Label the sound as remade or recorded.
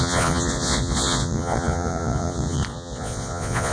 remade